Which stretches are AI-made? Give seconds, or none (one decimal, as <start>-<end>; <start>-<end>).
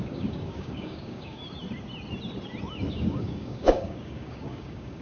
0.0-1.4; 2.9-5.0